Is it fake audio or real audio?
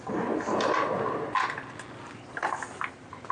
real